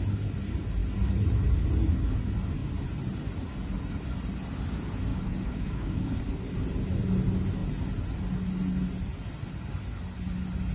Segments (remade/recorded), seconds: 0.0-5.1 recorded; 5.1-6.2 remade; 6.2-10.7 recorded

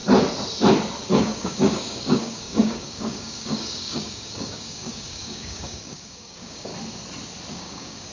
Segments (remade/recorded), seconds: 0.0-1.1 recorded; 1.1-6.7 remade; 6.7-7.5 recorded; 7.5-8.1 remade

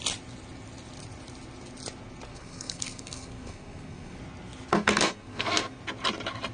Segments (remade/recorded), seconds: 0.0-2.3 recorded; 2.3-4.2 remade; 4.2-4.7 recorded; 4.7-5.8 remade; 5.8-6.5 recorded

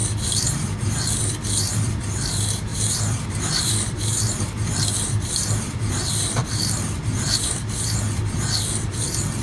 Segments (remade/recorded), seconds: 0.0-9.4 remade

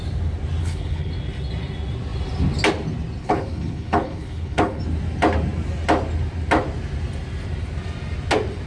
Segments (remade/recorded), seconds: 0.0-0.6 recorded; 0.6-1.1 remade; 1.1-3.2 recorded; 3.2-4.8 remade; 4.8-8.7 recorded

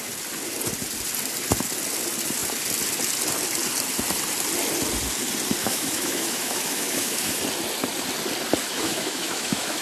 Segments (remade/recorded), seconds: 0.0-5.6 recorded; 5.6-7.4 remade; 7.4-8.6 recorded; 8.6-9.8 remade

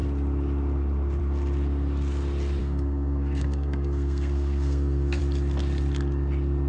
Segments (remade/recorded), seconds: 0.0-2.6 recorded; 2.6-5.2 remade; 5.2-6.7 recorded

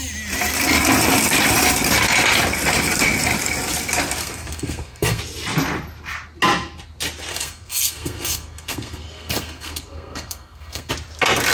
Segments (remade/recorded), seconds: 0.0-4.2 recorded; 4.2-5.2 remade; 5.2-7.3 recorded; 7.3-10.9 remade; 10.9-11.5 recorded